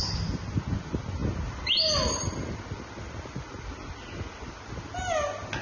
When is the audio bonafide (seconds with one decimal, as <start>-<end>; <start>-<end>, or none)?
0.0-5.6